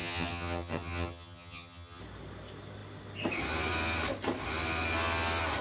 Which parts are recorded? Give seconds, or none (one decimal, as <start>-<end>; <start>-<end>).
2.0-5.6